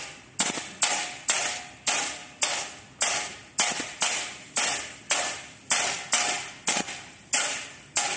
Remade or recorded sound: recorded